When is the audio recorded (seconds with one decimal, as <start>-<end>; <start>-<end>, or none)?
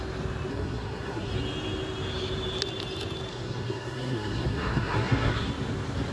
0.0-0.5; 1.3-3.3; 5.5-6.1